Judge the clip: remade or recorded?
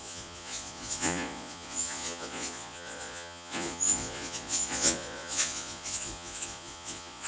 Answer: remade